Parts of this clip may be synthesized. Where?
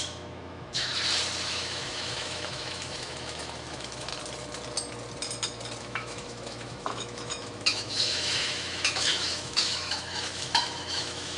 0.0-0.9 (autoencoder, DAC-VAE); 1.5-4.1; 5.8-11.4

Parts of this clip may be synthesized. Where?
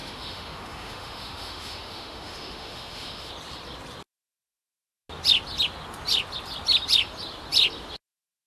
0.0-3.3 (autoencoder, DAC-VAE)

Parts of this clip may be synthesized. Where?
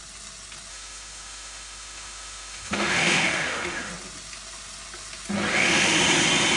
0.7-3.9 (autoencoder, DAC-VAE); 5.5-6.0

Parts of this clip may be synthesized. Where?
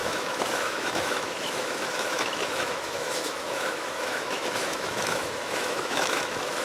0.0-6.6 (autoencoder, DAC-VAE)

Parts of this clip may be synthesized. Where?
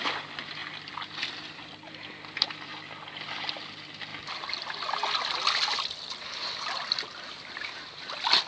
none